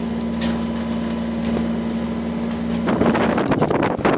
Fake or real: real